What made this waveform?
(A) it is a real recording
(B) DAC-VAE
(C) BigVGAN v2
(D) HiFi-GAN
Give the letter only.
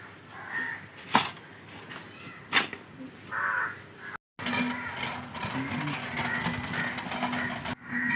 A